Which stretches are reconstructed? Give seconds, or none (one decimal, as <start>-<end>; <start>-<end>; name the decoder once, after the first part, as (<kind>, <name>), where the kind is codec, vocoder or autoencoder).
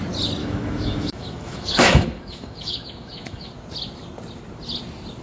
0.4-3.5 (autoencoder, DAC-VAE)